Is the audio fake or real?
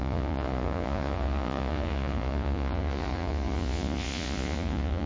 fake